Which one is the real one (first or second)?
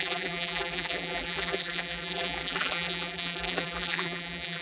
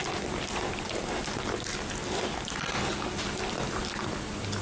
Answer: second